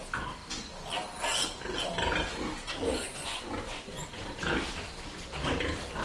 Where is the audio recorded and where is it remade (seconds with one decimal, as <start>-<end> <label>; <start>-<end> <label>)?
0.0-3.0 recorded; 3.0-4.2 remade; 4.2-6.0 recorded

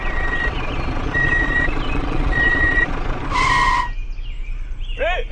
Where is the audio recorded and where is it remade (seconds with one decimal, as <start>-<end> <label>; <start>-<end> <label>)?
0.0-3.2 remade; 3.2-5.3 recorded

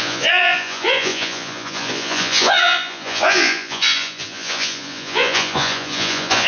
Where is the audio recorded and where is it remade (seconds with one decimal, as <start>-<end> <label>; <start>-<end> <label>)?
0.0-6.5 remade